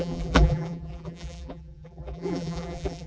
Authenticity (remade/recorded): remade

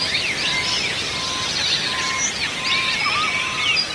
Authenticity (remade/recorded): recorded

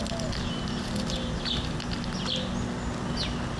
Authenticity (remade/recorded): recorded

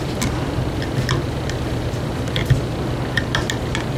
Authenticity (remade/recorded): recorded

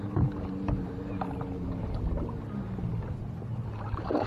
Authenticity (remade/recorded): recorded